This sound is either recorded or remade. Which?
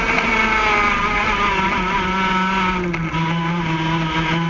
recorded